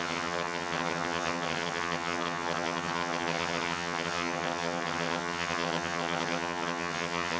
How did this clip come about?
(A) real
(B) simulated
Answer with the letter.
B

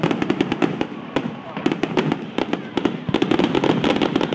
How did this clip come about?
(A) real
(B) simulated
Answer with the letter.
B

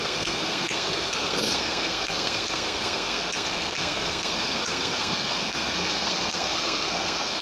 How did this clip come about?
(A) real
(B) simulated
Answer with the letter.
B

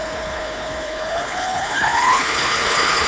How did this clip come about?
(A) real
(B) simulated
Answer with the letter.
B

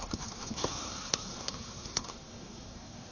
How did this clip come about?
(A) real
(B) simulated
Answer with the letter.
B